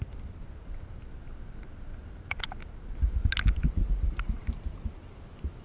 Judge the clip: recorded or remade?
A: recorded